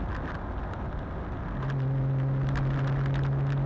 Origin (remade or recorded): recorded